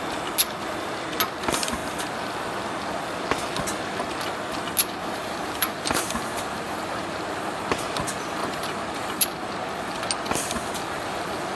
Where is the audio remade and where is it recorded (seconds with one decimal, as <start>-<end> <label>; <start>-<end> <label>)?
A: 0.0-5.0 recorded; 5.0-7.2 remade; 7.2-11.5 recorded